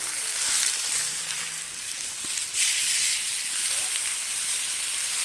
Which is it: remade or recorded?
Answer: recorded